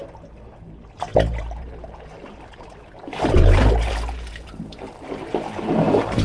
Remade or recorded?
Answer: remade